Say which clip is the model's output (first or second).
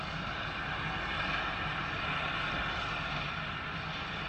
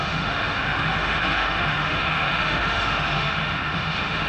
second